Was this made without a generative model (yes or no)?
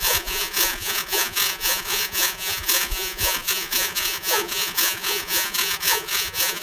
no